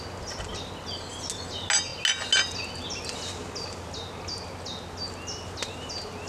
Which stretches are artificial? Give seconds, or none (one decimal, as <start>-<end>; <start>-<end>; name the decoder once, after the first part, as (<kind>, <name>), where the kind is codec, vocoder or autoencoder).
none